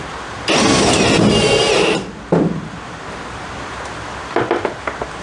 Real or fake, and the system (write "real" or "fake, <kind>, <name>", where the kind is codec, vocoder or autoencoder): real